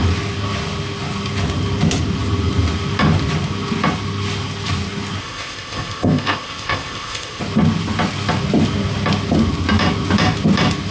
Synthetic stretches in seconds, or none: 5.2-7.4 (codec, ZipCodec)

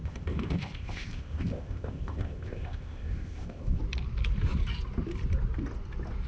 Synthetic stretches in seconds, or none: 0.0-3.8 (codec, ZipCodec)

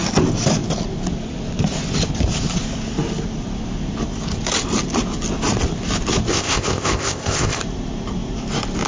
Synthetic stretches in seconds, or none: 6.3-7.6 (codec, ZipCodec)

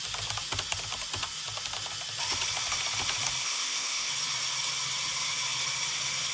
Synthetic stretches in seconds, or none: 3.4-4.1 (codec, ZipCodec)

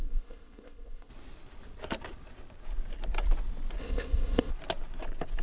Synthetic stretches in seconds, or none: 0.0-1.1 (codec, ZipCodec); 3.8-4.5